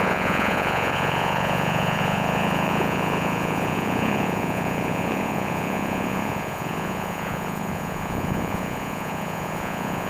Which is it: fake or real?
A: fake